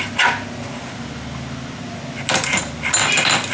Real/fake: real